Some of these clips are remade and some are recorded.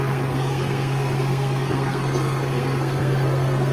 remade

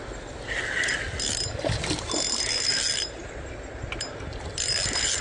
recorded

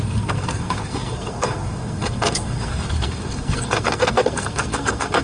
remade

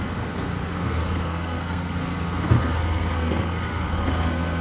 remade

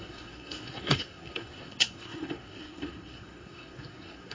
remade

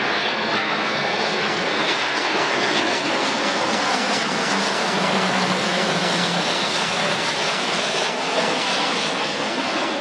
remade